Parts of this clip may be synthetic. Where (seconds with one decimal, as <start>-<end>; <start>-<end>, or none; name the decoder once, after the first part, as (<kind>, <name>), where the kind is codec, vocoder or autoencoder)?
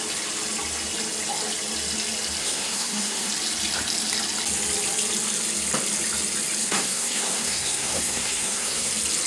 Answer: 2.4-3.3 (codec, SNAC); 6.6-8.9